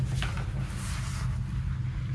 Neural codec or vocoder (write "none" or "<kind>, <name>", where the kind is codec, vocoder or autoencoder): none